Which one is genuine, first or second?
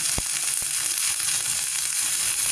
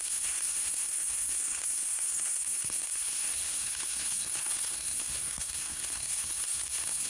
first